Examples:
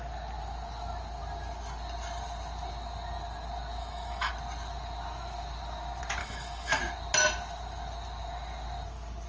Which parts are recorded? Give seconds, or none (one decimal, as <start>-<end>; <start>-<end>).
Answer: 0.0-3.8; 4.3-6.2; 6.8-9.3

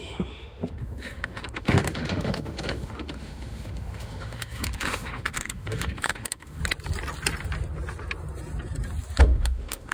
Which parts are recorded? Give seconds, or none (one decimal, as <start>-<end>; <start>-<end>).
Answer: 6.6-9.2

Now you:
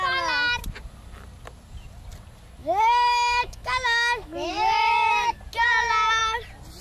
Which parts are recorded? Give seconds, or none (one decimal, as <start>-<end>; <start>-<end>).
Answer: 0.0-2.6; 5.4-6.8